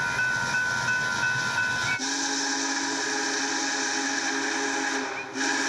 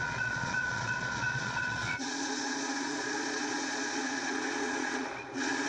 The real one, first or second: first